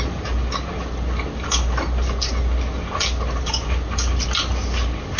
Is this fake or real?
real